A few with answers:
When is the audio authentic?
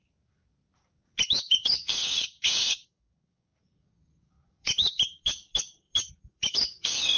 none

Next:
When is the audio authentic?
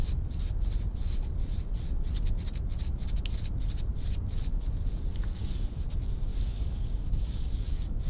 0.0-5.1; 5.6-6.3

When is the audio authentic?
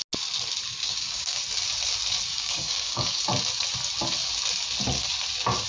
0.0-0.8; 1.4-2.3; 3.2-5.7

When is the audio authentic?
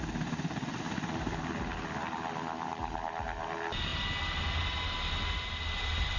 0.0-6.2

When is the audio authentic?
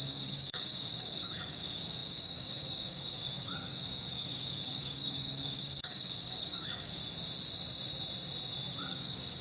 7.0-8.9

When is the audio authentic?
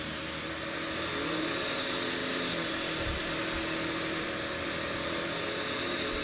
0.0-6.2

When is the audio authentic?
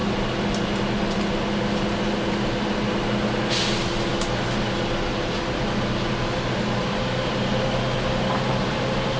0.0-9.2